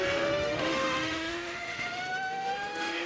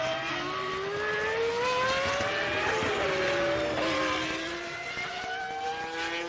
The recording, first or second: second